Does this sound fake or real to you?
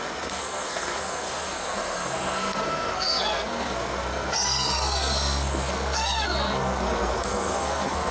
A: fake